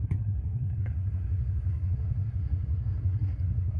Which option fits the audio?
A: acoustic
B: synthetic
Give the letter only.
B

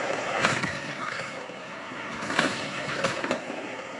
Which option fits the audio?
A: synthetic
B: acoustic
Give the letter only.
A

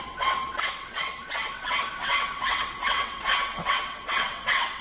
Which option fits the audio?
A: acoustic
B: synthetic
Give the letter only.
B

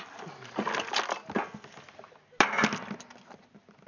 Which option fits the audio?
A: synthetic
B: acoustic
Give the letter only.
B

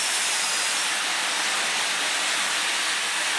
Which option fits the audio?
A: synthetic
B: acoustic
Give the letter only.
B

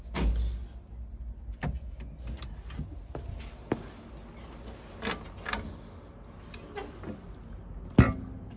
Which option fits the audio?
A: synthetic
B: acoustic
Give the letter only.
B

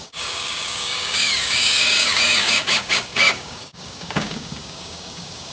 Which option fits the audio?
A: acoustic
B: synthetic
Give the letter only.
B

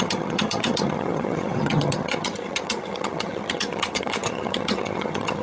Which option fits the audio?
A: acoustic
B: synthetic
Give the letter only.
B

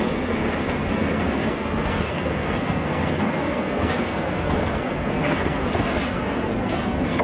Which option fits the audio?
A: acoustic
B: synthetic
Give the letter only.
B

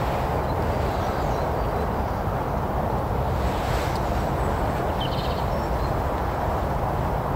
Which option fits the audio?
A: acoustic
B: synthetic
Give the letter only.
A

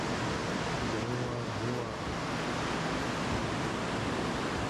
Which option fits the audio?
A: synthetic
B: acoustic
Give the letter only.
B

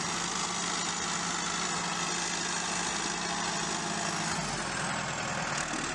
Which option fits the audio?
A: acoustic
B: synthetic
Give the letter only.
A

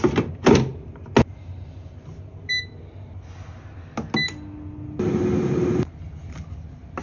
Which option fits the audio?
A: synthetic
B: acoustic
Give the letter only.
B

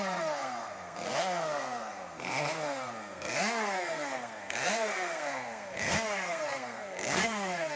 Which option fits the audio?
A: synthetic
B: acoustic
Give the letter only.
A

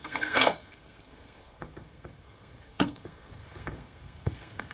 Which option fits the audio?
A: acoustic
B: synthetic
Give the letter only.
B